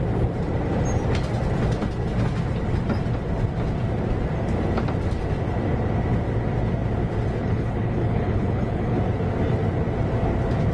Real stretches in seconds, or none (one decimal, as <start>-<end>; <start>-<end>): 0.0-7.4; 9.0-10.7